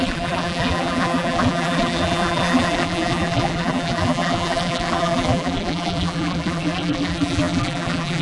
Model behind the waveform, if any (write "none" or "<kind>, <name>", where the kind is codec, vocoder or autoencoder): vocoder, BigVGAN v2